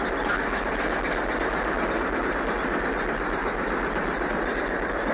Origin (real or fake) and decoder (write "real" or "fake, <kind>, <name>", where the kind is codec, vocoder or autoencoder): real